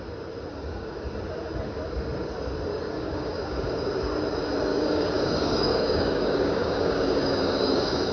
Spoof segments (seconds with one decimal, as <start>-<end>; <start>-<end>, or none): 0.5-1.1; 2.7-3.9; 4.7-8.1